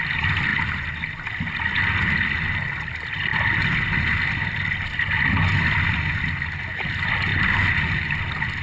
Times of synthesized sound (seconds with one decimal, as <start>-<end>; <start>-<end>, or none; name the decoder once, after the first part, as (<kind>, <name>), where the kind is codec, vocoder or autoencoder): none